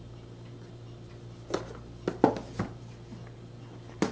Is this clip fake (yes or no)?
no